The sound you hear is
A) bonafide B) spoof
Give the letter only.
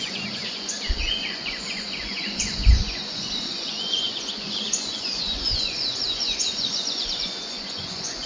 B